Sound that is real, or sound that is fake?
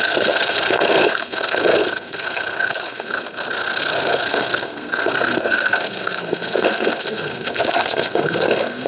fake